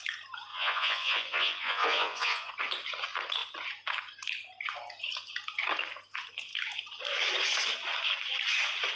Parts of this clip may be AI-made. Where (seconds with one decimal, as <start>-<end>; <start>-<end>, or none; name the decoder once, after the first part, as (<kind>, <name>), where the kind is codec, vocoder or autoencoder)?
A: 0.5-2.5 (vocoder, Vocos)